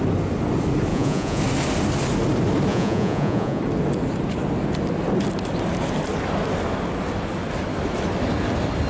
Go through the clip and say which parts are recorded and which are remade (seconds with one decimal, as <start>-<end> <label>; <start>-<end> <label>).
0.0-0.9 recorded; 0.9-1.4 remade; 1.4-2.7 recorded; 2.7-3.6 remade; 3.6-8.9 recorded